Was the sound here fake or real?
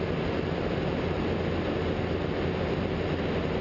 real